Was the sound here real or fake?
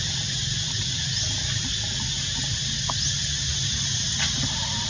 real